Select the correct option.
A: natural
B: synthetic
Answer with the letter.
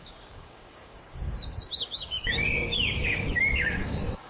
B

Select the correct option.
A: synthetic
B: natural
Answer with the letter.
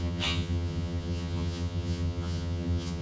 A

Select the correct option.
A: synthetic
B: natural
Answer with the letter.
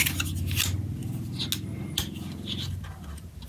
B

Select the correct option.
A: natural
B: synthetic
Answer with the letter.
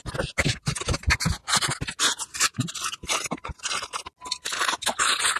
A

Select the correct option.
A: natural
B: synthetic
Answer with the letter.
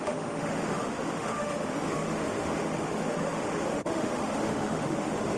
B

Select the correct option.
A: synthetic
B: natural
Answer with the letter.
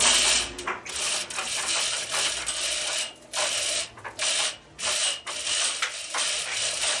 B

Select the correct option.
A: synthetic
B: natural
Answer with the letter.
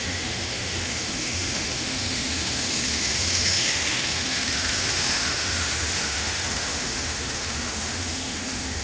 A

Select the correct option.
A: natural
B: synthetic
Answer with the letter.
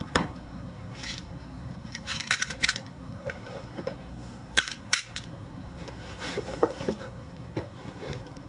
B